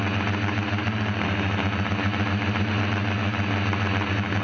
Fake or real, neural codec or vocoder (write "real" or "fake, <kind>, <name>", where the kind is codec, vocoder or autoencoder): real